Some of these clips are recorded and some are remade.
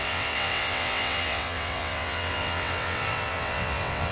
remade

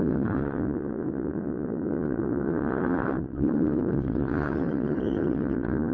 remade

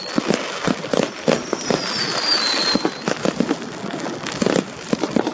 recorded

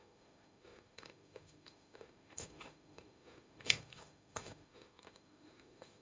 remade